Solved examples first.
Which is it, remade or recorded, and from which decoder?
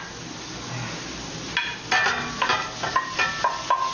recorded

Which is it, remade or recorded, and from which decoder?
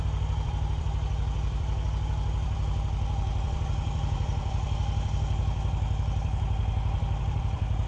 remade, vocoder, BigVGAN v2